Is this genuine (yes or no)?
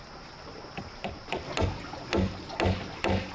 yes